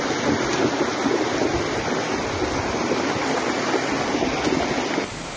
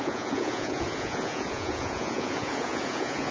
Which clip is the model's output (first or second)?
second